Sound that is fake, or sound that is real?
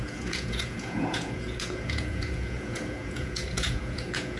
fake